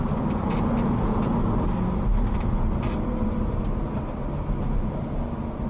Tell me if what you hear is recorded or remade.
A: recorded